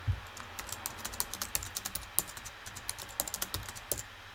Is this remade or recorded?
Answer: recorded